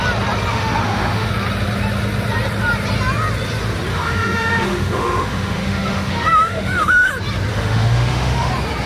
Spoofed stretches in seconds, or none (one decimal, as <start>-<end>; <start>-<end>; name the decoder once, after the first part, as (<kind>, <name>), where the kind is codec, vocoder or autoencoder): 0.5-1.3 (autoencoder, DAC-VAE); 3.9-7.1; 7.5-8.5